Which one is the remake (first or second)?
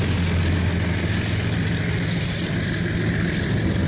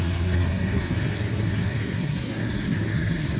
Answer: second